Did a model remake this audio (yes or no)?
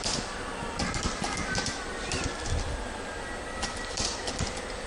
yes